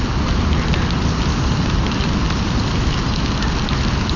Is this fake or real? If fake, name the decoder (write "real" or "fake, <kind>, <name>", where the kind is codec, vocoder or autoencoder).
real